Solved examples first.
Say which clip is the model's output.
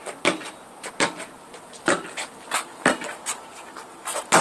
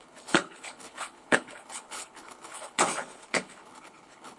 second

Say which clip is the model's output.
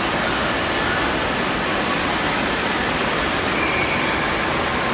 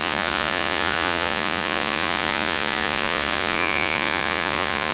second